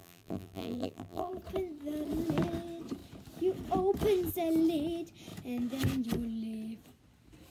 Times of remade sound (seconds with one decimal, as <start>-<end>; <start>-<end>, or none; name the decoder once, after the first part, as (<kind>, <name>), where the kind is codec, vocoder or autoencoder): 0.0-1.3 (vocoder, BigVGAN v2)